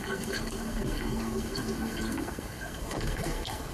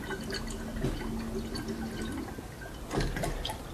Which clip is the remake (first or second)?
first